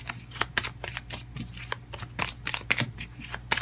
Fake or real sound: real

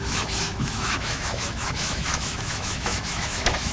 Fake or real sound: fake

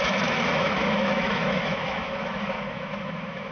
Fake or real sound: fake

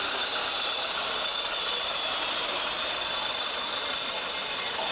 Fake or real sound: real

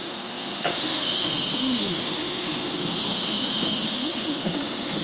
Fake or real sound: fake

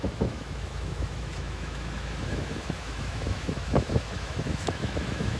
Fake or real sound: fake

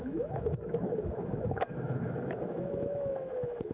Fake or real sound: fake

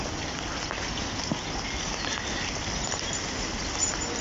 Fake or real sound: real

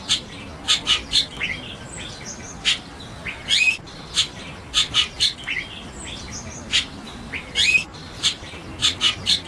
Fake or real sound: real